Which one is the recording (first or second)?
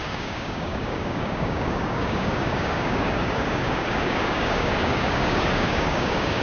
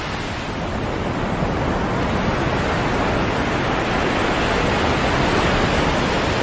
second